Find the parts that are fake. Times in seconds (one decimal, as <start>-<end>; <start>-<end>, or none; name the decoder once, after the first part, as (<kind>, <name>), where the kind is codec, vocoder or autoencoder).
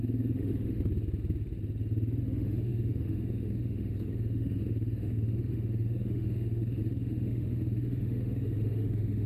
0.0-0.9 (autoencoder, DAC-VAE); 2.2-9.3